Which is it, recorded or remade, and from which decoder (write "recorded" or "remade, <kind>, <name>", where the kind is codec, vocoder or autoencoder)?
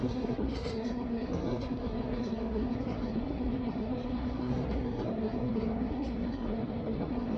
remade, codec, SNAC